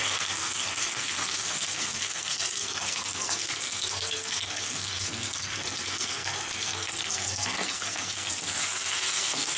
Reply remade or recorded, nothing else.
remade